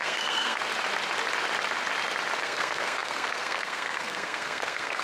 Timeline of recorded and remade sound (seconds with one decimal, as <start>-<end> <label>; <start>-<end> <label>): 0.0-0.7 remade; 0.7-2.4 recorded; 2.4-5.0 remade